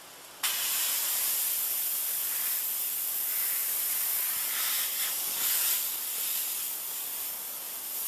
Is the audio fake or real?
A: real